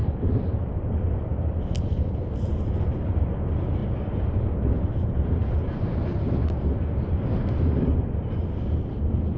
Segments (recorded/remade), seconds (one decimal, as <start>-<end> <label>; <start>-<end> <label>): 0.0-3.1 remade; 3.1-9.4 recorded